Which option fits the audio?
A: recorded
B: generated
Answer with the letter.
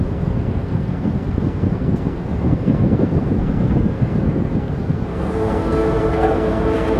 B